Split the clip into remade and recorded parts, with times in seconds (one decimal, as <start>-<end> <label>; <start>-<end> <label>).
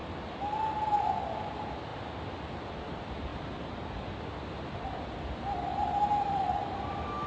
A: 0.0-3.3 recorded; 3.3-4.2 remade; 4.2-7.3 recorded